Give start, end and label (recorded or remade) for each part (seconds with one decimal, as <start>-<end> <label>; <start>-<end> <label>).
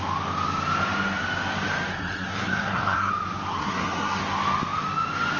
0.0-1.9 recorded; 1.9-3.1 remade; 3.1-3.6 recorded; 3.6-4.2 remade; 4.2-5.4 recorded